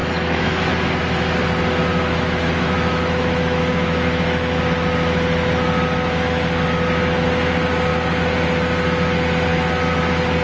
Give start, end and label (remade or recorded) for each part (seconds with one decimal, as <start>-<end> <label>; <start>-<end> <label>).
0.0-0.7 remade; 0.7-1.9 recorded; 1.9-4.6 remade; 4.6-9.5 recorded; 9.5-10.0 remade; 10.0-10.4 recorded